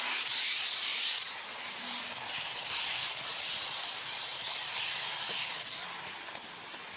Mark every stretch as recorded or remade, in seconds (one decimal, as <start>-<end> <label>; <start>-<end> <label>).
0.0-0.9 recorded; 0.9-2.7 remade; 2.7-4.3 recorded; 4.3-4.8 remade; 4.8-7.0 recorded